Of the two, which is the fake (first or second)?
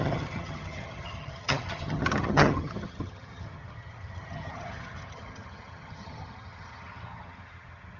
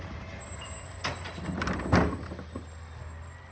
first